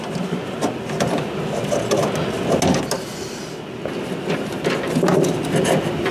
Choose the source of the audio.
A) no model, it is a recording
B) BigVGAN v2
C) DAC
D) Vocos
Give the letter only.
A